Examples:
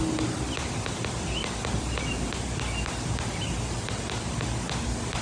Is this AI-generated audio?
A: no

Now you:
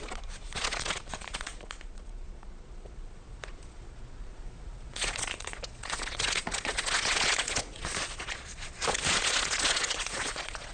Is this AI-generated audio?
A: yes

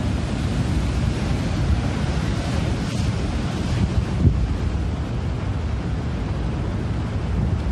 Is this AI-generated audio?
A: no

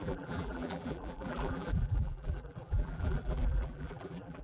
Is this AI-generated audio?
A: yes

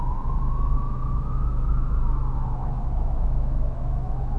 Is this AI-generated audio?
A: yes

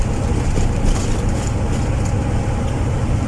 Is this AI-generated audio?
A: no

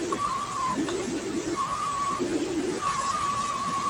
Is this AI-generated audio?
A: no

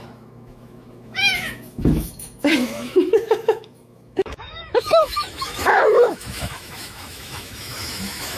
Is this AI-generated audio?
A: yes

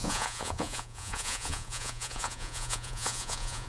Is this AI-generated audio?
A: yes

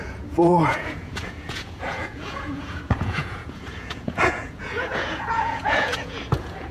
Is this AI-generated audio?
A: yes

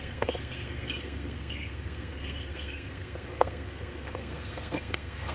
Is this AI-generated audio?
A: yes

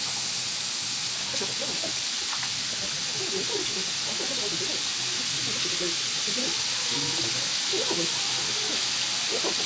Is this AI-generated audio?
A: no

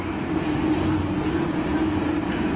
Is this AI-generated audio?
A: no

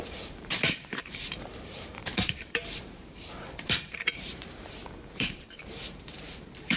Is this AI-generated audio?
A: yes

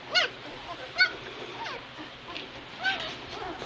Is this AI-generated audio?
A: no